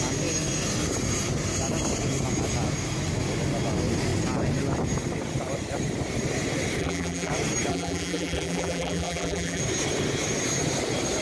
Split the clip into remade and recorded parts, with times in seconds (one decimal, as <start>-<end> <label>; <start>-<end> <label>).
0.0-6.8 recorded; 6.8-7.3 remade; 7.3-7.7 recorded; 7.7-9.6 remade; 9.6-11.2 recorded